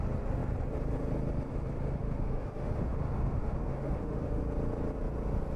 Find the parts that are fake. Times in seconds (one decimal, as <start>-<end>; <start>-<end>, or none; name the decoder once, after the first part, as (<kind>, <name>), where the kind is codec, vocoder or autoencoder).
2.0-4.4 (autoencoder, DAC-VAE)